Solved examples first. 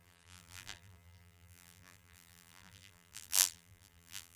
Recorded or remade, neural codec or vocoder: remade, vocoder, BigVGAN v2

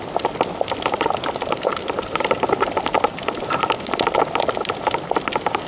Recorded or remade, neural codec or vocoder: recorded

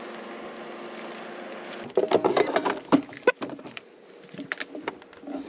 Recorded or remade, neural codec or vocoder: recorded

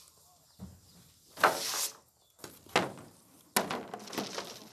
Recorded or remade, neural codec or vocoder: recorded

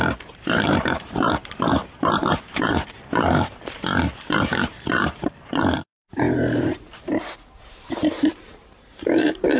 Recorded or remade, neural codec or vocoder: remade, vocoder, BigVGAN v2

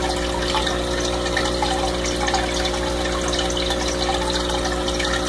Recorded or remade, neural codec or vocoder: recorded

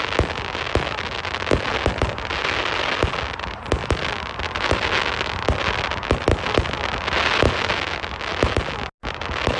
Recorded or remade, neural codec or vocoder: recorded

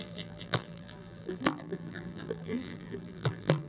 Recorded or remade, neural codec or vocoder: remade, vocoder, BigVGAN v2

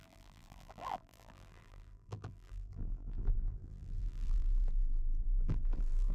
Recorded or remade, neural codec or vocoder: remade, vocoder, BigVGAN v2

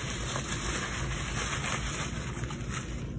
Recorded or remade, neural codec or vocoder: recorded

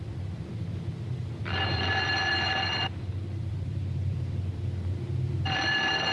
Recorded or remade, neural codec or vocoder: remade, vocoder, BigVGAN v2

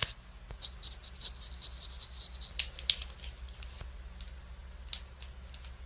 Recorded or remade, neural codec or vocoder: recorded